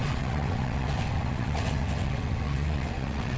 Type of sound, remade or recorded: remade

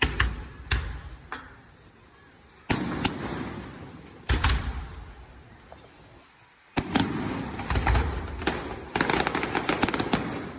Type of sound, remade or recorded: recorded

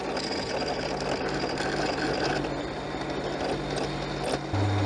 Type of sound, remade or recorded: recorded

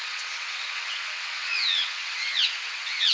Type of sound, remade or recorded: remade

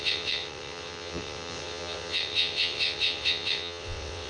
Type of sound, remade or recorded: remade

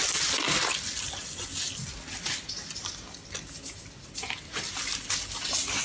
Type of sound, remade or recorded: recorded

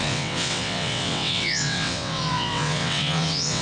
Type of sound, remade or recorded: remade